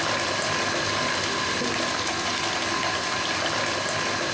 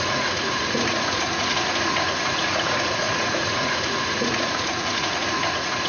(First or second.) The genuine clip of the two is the first